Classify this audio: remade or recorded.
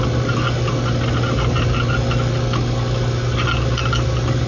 recorded